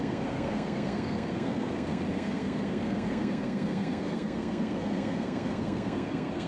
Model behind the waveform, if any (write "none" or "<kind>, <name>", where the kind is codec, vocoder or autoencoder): codec, SNAC